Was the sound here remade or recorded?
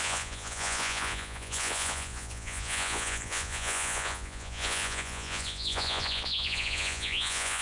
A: remade